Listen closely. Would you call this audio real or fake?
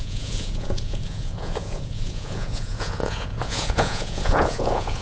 fake